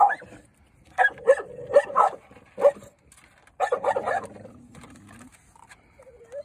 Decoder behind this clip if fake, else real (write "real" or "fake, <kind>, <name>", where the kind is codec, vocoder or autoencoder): real